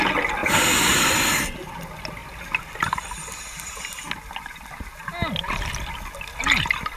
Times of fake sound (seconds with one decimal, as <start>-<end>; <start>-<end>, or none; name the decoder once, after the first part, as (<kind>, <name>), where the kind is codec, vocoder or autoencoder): 0.4-1.7 (vocoder, BigVGAN v2)